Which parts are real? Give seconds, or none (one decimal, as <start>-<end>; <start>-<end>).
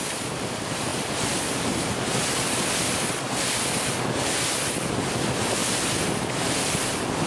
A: 5.6-7.3